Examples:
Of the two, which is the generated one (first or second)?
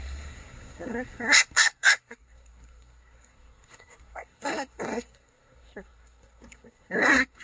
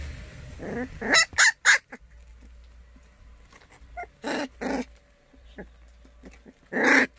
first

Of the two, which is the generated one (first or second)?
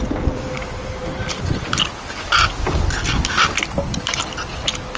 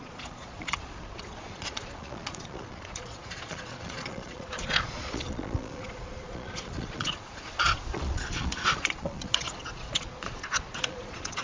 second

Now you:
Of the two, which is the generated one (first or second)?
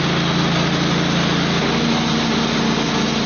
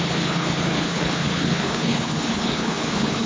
second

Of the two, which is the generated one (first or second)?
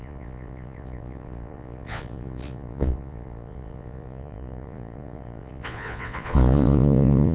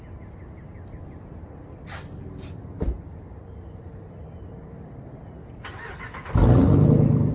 first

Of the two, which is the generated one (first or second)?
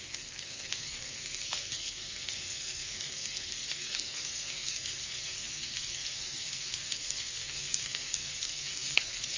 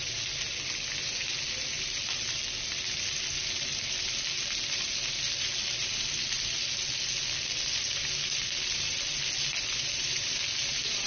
first